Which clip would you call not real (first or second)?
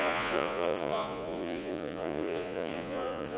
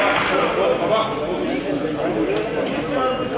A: first